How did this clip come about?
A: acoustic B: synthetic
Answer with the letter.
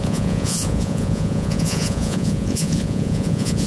B